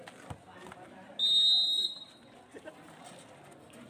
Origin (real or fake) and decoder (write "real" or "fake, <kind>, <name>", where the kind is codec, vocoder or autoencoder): real